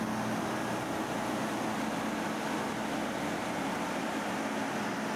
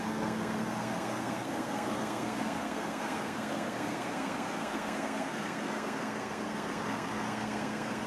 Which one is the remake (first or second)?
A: second